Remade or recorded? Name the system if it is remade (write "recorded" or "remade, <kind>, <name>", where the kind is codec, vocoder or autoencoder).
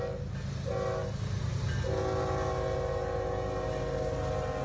recorded